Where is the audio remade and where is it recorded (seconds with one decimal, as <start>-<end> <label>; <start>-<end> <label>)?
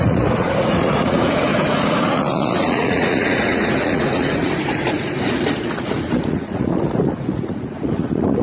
0.0-8.4 remade